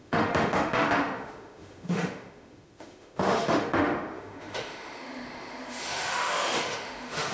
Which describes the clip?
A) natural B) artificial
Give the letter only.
B